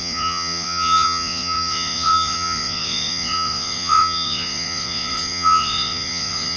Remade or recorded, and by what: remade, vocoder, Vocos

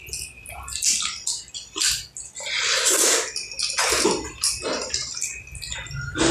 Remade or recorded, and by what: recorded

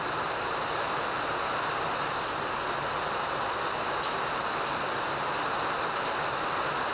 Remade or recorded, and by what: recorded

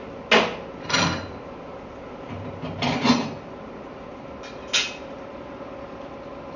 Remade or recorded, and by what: recorded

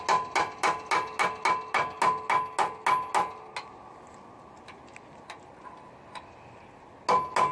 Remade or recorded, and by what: recorded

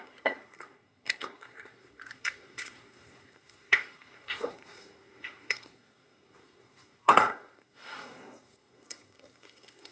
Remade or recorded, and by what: remade, codec, SNAC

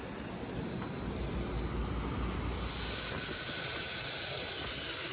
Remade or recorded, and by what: recorded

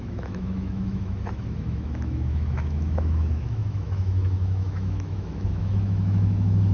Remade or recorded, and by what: remade, autoencoder, DAC-VAE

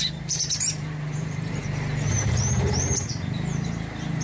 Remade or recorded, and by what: remade, vocoder, BigVGAN v2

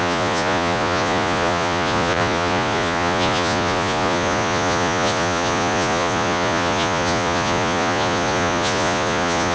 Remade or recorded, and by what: remade, vocoder, Vocos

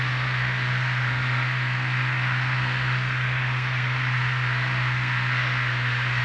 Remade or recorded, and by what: remade, codec, SNAC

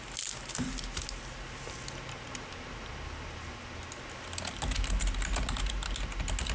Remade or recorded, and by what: recorded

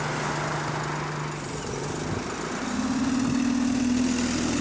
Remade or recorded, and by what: recorded